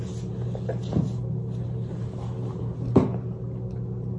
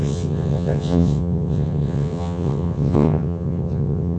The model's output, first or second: second